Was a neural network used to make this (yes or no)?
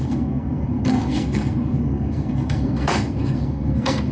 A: yes